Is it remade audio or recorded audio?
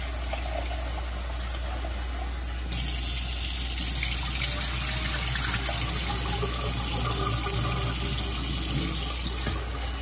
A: recorded